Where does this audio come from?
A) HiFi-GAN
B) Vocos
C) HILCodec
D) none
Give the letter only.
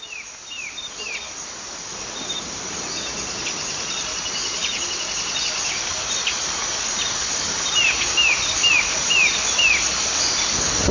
D